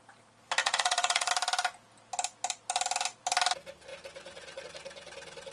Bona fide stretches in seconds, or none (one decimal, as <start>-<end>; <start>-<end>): 0.0-0.6; 1.3-3.9; 4.6-5.5